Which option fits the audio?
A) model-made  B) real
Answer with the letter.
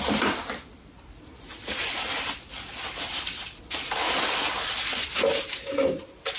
B